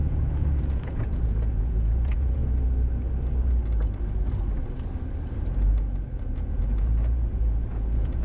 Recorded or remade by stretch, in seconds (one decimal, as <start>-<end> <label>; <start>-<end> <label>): 0.0-2.4 remade; 2.4-6.2 recorded; 6.2-8.2 remade

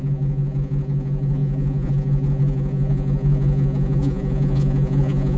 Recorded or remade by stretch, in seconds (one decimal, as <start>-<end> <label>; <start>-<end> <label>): 0.0-5.4 remade

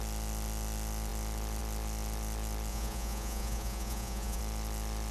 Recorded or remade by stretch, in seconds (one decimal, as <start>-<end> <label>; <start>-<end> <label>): 0.0-2.7 recorded; 2.7-4.4 remade; 4.4-5.1 recorded